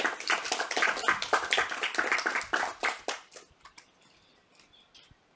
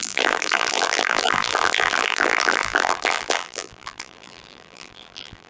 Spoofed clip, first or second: second